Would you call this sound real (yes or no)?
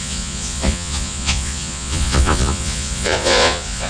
no